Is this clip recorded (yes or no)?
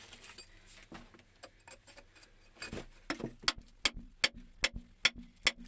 yes